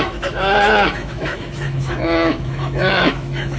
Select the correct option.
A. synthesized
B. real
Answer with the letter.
A